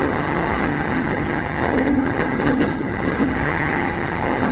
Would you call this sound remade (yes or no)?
yes